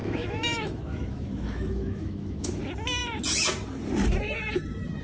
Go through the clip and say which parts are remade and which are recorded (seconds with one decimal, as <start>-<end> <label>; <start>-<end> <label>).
0.0-2.6 remade; 2.6-5.0 recorded